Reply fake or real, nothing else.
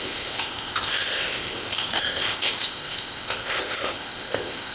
fake